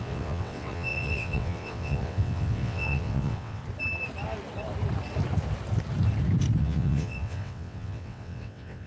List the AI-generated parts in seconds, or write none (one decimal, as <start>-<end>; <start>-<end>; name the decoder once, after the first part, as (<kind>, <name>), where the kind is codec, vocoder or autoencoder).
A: 0.0-3.6 (vocoder, WaveNeXt); 6.6-8.9